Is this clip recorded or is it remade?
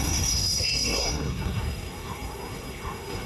remade